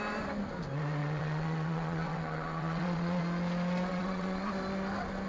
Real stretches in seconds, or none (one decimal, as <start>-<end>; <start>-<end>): 0.0-1.0; 3.2-3.9; 4.5-5.3